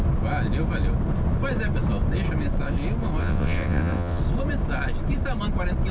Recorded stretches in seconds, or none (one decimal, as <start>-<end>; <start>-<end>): 0.0-3.2; 4.2-5.9